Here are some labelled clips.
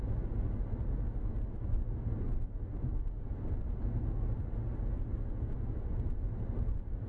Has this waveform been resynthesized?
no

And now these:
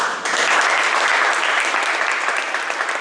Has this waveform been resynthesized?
no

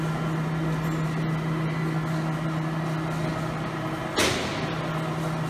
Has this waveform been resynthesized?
no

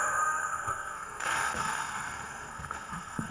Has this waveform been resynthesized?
yes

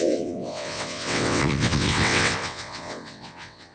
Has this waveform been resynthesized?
yes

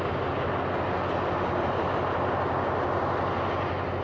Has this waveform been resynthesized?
no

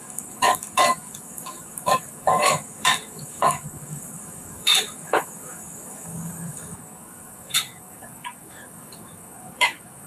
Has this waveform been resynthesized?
yes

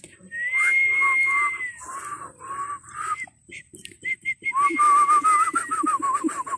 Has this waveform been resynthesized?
no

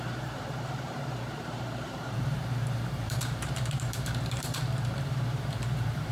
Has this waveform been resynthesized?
yes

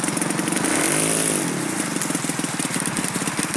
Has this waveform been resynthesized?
no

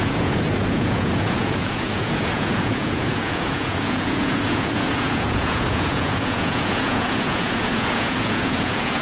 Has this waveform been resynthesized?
yes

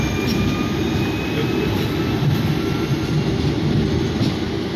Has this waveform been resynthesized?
no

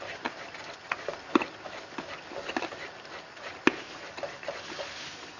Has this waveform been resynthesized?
no